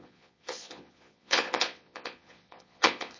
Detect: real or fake fake